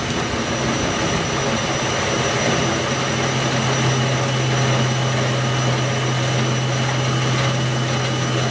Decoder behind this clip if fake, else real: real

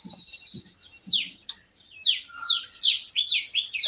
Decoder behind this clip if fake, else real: real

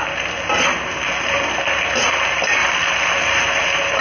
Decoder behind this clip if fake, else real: real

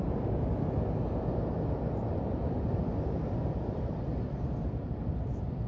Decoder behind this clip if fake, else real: fake, vocoder, BigVGAN v2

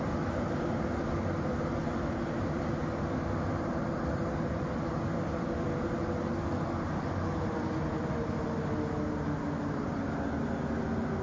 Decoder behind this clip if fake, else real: real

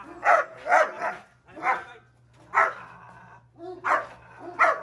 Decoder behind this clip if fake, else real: real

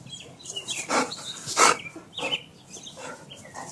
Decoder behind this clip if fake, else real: real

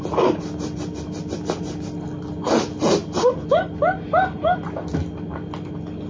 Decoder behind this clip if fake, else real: real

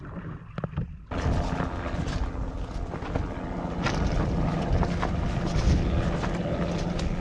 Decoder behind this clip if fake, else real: real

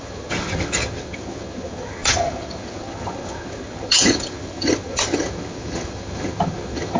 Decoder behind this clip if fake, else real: fake, vocoder, HiFi-GAN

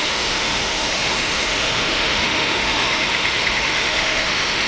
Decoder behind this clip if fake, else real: fake, autoencoder, DAC-VAE